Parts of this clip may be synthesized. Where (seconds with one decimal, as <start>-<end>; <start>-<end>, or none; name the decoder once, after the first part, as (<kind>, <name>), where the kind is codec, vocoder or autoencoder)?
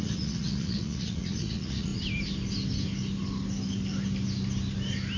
0.0-1.9 (vocoder, Vocos)